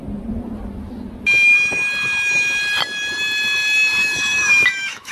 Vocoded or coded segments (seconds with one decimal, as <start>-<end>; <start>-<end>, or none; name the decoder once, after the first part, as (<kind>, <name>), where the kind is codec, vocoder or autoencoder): 4.0-5.1 (autoencoder, DAC-VAE)